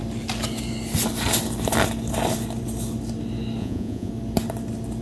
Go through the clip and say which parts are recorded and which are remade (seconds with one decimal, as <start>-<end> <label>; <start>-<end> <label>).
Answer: 0.0-3.6 recorded; 3.6-4.1 remade; 4.1-5.0 recorded

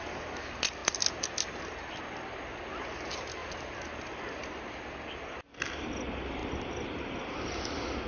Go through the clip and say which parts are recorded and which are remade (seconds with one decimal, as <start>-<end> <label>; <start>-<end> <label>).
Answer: 0.0-8.1 recorded

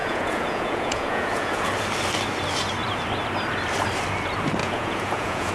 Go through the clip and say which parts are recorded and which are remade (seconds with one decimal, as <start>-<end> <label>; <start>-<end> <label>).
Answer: 0.0-1.7 remade; 1.7-4.6 recorded; 4.6-5.5 remade

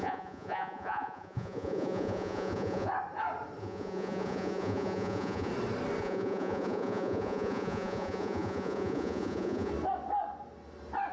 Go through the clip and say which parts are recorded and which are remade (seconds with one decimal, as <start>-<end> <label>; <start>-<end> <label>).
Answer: 0.0-2.9 remade; 2.9-3.6 recorded; 3.6-5.5 remade; 5.5-6.0 recorded; 6.0-9.7 remade; 9.7-11.1 recorded

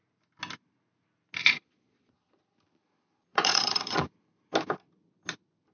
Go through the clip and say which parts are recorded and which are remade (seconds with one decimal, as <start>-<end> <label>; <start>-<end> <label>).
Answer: 0.0-1.4 recorded; 1.4-2.4 remade; 2.4-3.3 recorded; 3.3-4.0 remade; 4.0-5.7 recorded